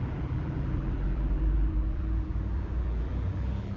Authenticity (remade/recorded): remade